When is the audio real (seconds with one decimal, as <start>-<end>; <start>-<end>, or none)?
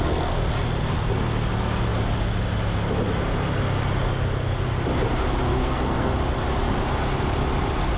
0.0-5.5; 6.1-8.0